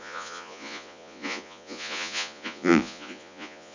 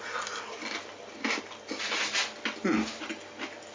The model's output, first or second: first